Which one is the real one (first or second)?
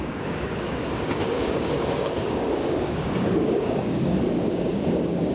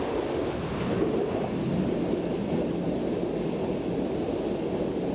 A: second